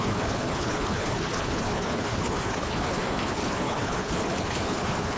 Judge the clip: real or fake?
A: fake